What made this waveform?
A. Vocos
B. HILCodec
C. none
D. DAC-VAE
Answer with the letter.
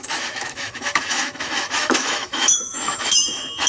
D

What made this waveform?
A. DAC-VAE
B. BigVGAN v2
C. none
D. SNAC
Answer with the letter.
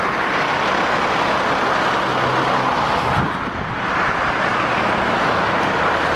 C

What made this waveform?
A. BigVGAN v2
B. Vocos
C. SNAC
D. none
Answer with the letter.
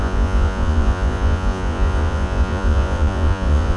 B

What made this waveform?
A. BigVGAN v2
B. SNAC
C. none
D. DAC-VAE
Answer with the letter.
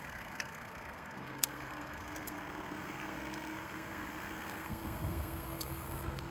B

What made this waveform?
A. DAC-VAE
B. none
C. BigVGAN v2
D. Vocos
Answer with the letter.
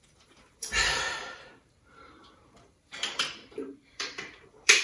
C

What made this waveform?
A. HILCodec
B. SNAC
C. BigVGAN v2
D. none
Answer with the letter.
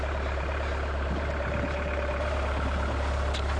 C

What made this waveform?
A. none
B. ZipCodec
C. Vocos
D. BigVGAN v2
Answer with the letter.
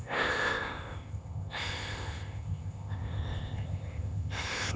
B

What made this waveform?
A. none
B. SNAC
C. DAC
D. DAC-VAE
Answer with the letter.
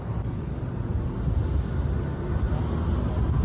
A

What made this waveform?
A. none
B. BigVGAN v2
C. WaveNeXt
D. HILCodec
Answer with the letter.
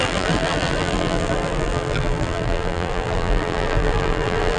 B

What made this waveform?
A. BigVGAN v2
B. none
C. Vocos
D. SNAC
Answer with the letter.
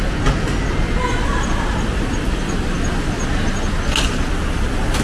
B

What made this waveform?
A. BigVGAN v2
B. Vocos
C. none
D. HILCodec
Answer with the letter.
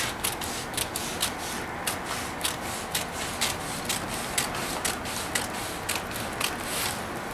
C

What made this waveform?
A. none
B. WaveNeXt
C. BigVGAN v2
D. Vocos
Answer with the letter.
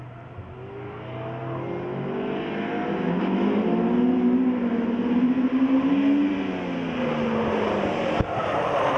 A